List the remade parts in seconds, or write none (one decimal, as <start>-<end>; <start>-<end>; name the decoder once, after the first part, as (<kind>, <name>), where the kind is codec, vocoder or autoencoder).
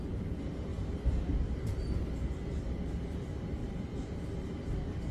0.7-3.0 (vocoder, BigVGAN v2); 3.6-4.3